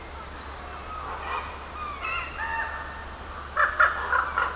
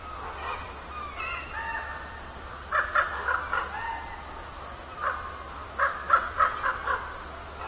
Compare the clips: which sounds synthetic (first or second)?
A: second